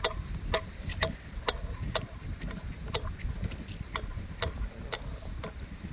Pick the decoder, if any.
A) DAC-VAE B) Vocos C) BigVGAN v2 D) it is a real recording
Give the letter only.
C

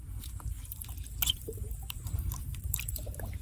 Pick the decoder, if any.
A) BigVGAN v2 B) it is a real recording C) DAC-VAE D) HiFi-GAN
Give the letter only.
A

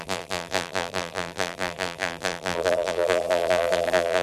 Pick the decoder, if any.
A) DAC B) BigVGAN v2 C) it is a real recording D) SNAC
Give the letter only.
B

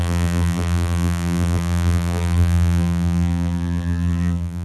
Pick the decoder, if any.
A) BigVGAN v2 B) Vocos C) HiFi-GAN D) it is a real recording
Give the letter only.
A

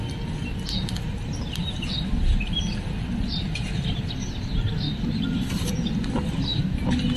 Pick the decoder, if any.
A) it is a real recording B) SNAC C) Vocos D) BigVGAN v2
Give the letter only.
A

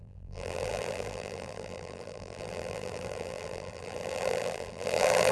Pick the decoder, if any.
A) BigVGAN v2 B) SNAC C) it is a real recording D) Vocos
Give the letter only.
A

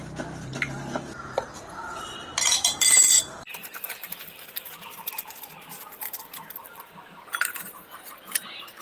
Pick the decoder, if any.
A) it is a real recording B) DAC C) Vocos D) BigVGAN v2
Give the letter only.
D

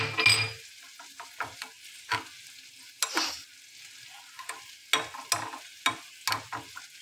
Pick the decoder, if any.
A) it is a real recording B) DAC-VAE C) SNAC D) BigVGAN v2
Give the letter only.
A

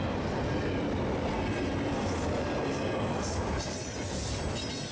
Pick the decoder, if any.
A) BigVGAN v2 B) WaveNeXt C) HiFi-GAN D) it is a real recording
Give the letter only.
D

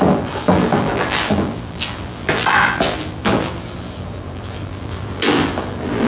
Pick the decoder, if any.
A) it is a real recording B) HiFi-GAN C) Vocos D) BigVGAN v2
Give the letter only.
D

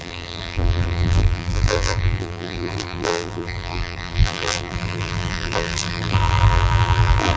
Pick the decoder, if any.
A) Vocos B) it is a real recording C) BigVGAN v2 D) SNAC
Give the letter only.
C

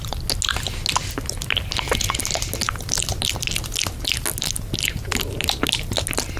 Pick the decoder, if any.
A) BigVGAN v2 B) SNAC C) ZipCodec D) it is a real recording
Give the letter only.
D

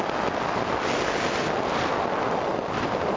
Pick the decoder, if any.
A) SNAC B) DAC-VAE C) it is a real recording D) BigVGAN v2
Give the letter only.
C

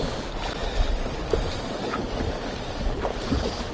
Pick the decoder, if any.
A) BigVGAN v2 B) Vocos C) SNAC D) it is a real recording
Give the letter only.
D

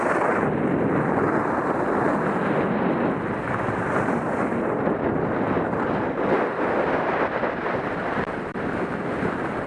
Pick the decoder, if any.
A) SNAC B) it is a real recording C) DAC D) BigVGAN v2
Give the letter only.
D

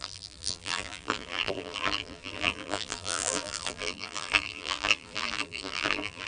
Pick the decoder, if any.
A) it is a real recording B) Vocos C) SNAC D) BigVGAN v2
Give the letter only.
D